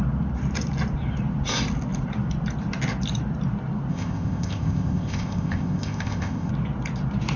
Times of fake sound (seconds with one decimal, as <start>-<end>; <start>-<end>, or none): 3.9-6.5